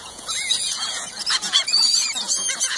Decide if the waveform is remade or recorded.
remade